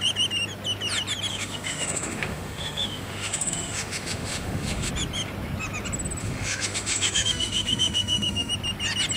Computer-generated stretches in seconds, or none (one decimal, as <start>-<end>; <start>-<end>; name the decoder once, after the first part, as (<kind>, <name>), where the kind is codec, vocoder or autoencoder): 1.3-4.9 (autoencoder, DAC-VAE); 6.2-8.5